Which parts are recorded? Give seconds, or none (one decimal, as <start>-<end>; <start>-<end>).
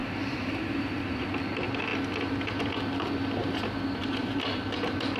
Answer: 1.4-5.2